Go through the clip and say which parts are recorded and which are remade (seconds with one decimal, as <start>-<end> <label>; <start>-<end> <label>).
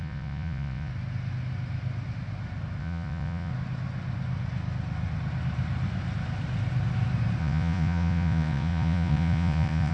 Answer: 0.0-0.9 remade; 0.9-2.8 recorded; 2.8-3.5 remade; 3.5-7.4 recorded; 7.4-9.9 remade